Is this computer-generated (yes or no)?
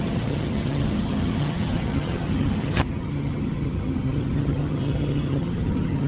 yes